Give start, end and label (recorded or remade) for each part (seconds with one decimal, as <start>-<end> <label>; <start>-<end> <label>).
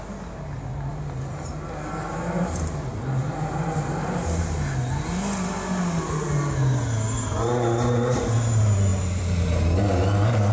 0.0-10.5 recorded